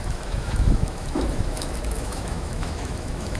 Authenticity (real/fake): fake